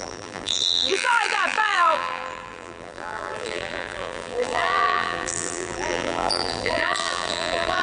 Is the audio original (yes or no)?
no